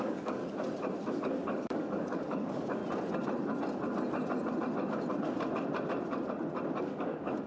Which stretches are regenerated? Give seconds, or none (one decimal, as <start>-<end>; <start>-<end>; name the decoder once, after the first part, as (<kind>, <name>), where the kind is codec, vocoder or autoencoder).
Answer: 0.0-0.4 (codec, DAC); 1.1-2.8; 6.8-7.5